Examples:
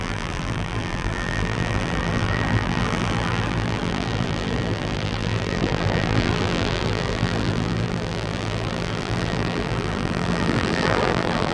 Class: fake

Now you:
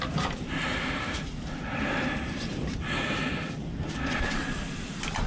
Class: fake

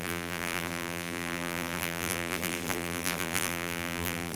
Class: fake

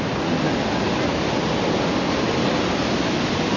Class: real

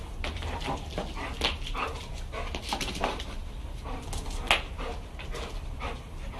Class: real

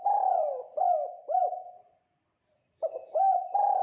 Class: real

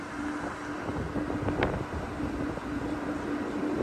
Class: real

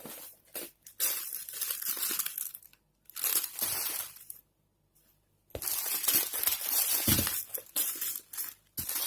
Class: real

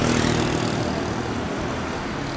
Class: real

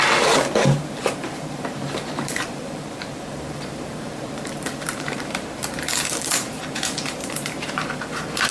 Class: fake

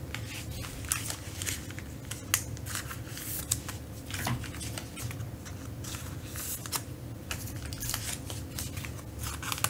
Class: real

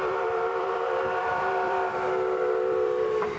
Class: fake